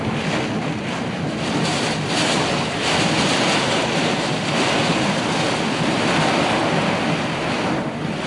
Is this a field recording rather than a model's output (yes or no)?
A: yes